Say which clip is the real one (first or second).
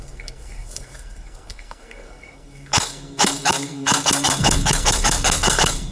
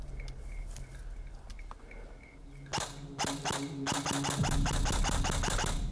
second